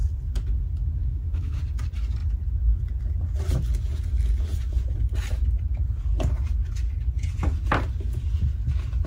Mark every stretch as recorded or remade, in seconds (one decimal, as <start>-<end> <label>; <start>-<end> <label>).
0.0-1.0 recorded; 1.0-1.6 remade; 1.6-9.1 recorded